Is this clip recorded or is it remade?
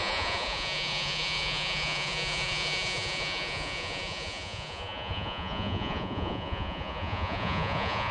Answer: remade